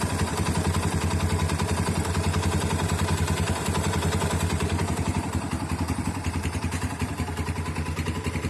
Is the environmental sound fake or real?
fake